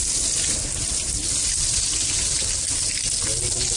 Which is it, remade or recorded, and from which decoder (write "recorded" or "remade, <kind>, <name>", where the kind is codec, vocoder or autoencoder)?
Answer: recorded